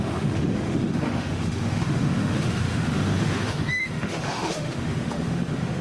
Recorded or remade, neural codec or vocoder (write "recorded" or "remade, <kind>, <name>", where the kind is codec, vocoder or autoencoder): remade, autoencoder, DAC-VAE